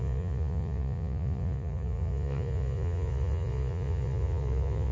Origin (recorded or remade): remade